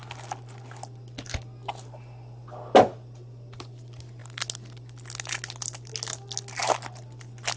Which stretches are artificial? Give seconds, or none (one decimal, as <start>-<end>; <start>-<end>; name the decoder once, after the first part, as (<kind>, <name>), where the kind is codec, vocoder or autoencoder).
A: none